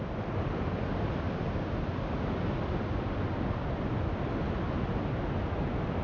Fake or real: real